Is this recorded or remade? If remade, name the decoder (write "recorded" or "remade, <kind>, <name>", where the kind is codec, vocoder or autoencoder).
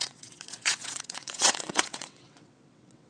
remade, vocoder, WaveNeXt